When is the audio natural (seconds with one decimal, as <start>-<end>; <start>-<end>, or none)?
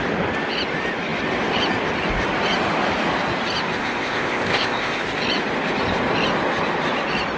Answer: 0.0-3.8; 5.0-7.4